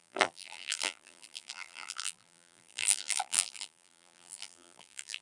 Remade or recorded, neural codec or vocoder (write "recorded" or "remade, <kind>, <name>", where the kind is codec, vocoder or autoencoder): remade, vocoder, BigVGAN v2